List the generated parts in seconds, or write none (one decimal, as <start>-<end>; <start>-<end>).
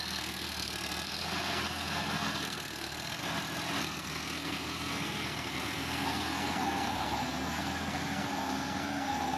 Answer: 0.0-3.2; 3.8-9.4